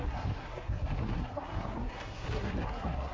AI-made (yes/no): yes